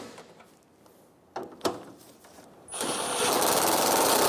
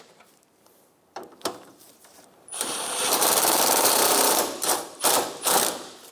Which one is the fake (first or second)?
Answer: second